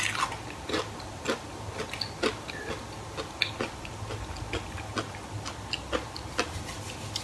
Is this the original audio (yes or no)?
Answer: yes